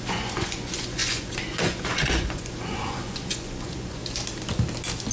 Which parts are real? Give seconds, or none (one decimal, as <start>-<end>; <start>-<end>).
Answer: 4.0-5.1